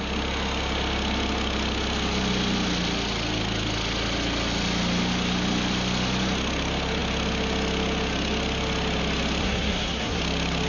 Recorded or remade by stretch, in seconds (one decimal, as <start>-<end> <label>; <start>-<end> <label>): 0.0-9.4 recorded; 9.4-10.2 remade; 10.2-10.7 recorded